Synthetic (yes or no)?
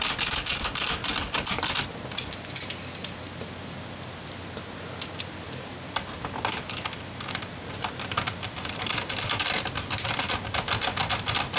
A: no